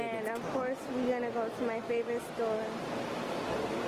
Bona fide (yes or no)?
yes